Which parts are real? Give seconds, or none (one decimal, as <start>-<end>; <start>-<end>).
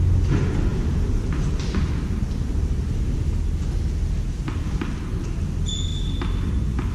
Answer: 0.0-6.9